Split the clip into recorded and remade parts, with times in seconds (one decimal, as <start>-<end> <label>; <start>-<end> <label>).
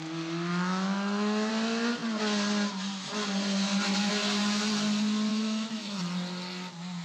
0.0-0.5 recorded; 0.5-1.5 remade; 1.5-5.3 recorded; 5.3-6.0 remade; 6.0-7.0 recorded